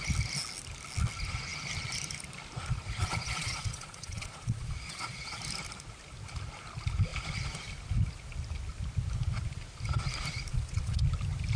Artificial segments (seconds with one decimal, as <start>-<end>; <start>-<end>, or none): 3.0-5.4; 10.5-11.0